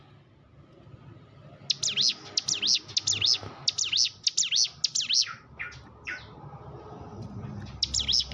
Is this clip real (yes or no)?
yes